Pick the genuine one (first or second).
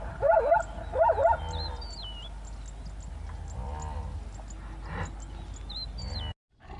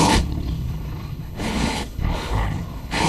first